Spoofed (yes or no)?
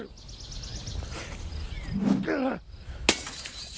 no